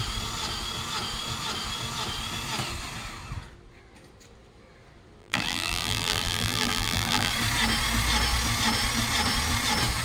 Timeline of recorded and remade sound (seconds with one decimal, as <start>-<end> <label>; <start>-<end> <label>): 0.0-5.2 recorded; 5.2-7.3 remade; 7.3-10.0 recorded